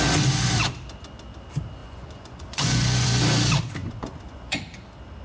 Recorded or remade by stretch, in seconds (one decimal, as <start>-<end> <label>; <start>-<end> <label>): 0.0-1.8 recorded; 1.8-3.2 remade; 3.2-3.8 recorded; 3.8-4.6 remade; 4.6-5.2 recorded